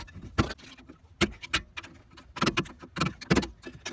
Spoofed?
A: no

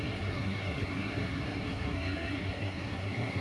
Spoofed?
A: yes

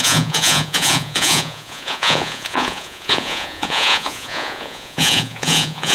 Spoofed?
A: yes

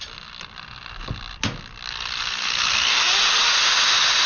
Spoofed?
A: no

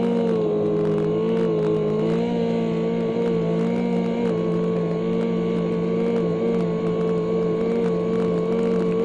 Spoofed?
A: no